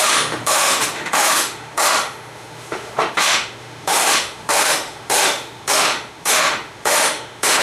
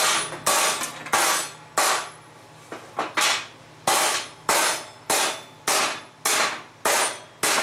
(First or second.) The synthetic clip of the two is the first